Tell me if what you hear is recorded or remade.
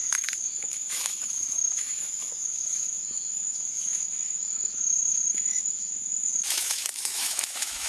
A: remade